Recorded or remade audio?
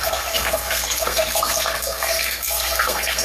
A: remade